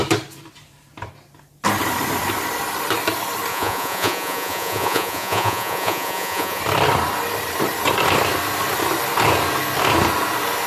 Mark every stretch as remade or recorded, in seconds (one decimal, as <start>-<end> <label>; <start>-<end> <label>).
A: 0.0-3.5 recorded; 3.5-6.6 remade; 6.6-10.7 recorded